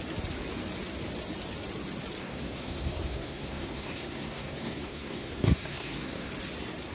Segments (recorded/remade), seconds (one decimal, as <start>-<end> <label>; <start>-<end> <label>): 0.0-2.2 recorded; 2.2-6.3 remade; 6.3-6.9 recorded